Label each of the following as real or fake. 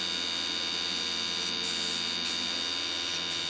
real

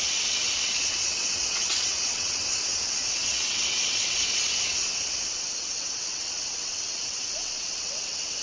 fake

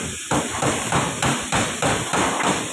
fake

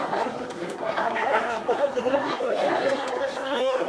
fake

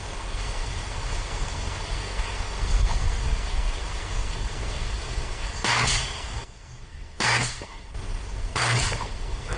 fake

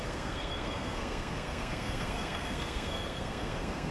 fake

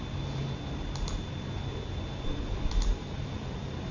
real